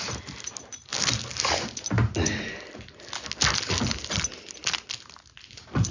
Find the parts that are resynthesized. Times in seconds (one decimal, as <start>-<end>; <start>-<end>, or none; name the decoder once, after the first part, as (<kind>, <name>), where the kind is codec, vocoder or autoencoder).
none